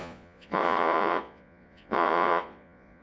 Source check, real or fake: fake